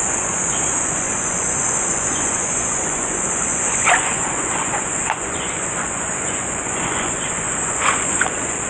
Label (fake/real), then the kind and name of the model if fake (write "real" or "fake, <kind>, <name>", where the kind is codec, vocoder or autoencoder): fake, vocoder, Vocos